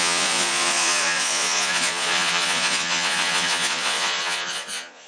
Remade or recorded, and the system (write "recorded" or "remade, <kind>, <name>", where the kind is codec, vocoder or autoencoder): remade, vocoder, Vocos